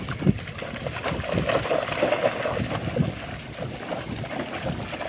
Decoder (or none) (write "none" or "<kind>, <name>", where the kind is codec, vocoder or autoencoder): none